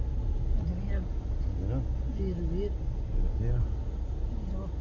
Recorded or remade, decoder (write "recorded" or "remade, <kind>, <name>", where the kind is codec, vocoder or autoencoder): recorded